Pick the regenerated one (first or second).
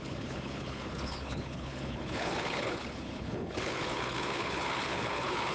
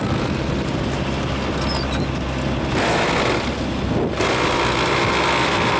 first